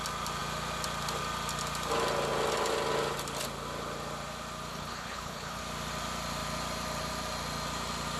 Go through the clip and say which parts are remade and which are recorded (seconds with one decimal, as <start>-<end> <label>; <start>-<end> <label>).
0.0-4.7 recorded; 4.7-5.6 remade; 5.6-8.2 recorded